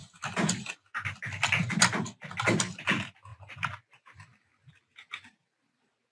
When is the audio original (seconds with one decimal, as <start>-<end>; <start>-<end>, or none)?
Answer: 0.0-6.1